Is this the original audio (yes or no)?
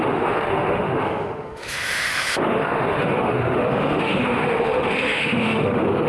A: no